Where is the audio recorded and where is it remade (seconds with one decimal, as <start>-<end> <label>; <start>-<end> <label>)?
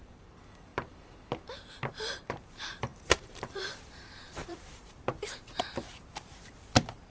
0.0-7.1 remade